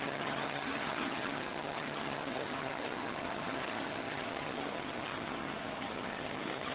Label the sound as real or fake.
fake